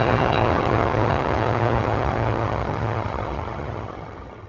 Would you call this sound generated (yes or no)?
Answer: yes